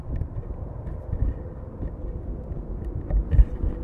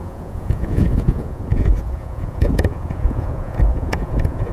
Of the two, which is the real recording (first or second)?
first